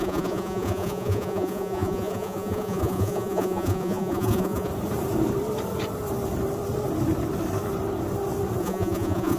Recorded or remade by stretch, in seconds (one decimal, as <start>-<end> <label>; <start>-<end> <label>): 0.0-4.7 remade; 4.7-8.6 recorded; 8.6-9.4 remade